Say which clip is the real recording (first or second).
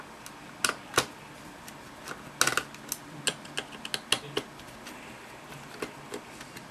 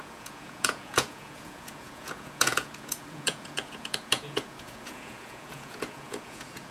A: first